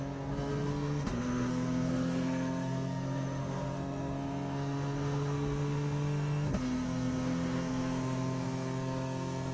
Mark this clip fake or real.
fake